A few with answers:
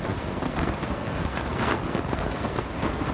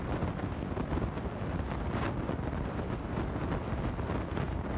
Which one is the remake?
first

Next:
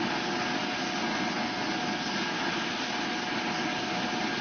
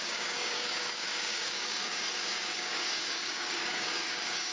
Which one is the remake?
second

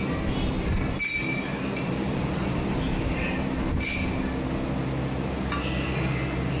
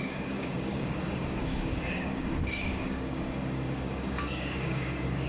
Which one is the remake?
second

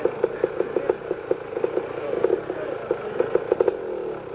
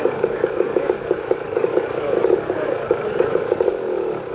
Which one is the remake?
second